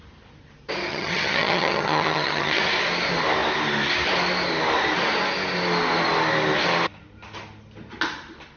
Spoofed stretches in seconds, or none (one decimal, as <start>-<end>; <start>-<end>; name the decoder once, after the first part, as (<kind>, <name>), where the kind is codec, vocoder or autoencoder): 0.9-2.6 (vocoder, HiFi-GAN)

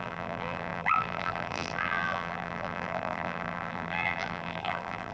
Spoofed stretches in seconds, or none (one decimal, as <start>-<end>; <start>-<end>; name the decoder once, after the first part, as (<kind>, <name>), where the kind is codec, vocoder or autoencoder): 0.0-5.1 (vocoder, BigVGAN v2)

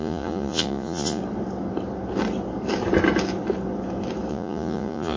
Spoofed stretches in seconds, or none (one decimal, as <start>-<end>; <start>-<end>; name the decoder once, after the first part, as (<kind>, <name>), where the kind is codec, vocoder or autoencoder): 0.0-1.2 (vocoder, Vocos); 4.3-5.2

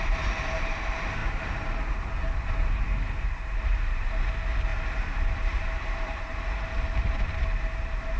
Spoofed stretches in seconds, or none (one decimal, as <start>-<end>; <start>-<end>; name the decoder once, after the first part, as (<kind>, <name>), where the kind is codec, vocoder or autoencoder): 4.7-7.2 (vocoder, BigVGAN v2)

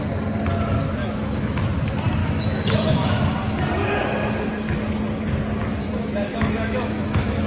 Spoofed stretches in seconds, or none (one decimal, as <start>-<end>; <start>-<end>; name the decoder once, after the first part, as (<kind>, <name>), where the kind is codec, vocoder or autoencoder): 1.0-1.6 (autoencoder, DAC-VAE); 2.2-3.2; 5.8-7.5

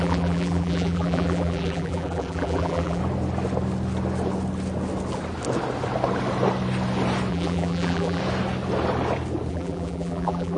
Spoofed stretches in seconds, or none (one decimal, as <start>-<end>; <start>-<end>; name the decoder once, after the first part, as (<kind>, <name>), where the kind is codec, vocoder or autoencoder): 0.0-3.0 (vocoder, BigVGAN v2); 7.3-8.2; 9.5-10.6

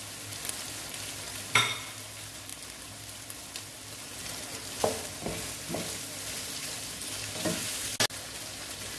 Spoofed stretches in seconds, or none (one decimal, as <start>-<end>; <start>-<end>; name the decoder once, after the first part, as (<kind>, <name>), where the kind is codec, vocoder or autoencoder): none

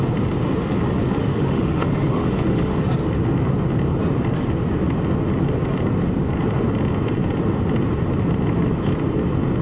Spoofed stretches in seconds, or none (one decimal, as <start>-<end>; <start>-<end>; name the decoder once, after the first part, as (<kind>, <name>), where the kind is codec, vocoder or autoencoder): 1.2-2.8 (autoencoder, DAC-VAE)